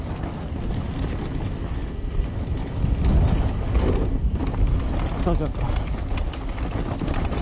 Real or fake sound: real